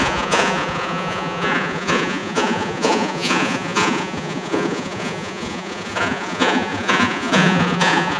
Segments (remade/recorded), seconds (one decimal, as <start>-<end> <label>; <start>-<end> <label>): 0.0-8.2 remade